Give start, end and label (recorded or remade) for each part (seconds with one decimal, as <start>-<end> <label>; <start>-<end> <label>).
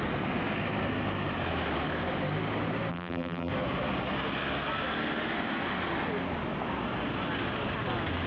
0.0-2.9 recorded; 2.9-3.5 remade; 3.5-8.3 recorded